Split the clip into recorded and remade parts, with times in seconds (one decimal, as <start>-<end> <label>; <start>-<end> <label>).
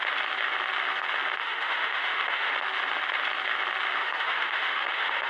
0.0-1.4 recorded; 1.4-2.5 remade; 2.5-4.0 recorded; 4.0-5.3 remade